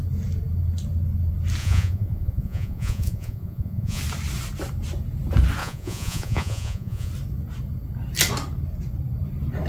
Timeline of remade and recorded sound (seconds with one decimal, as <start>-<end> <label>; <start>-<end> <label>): 0.0-1.6 recorded; 1.6-4.0 remade; 4.0-5.6 recorded; 5.6-7.1 remade; 7.1-9.7 recorded